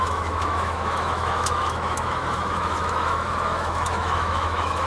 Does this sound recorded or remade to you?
remade